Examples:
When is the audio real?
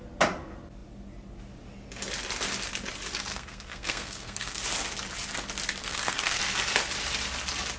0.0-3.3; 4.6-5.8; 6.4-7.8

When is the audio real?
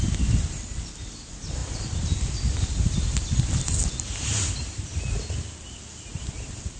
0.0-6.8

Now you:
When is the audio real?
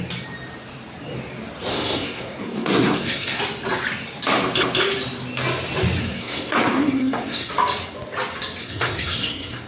0.0-1.7; 3.4-6.0; 7.5-8.6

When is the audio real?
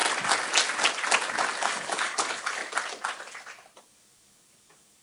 0.0-1.6; 2.6-3.8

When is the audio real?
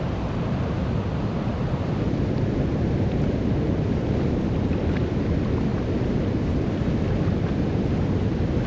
0.0-8.7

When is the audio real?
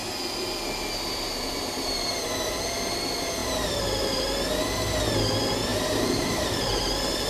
0.0-3.4; 4.2-5.7; 6.7-7.3